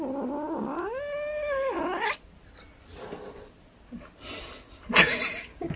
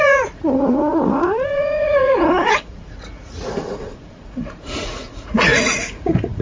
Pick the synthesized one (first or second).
second